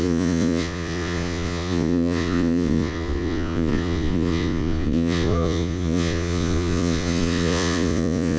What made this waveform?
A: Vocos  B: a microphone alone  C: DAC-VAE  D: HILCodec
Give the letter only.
A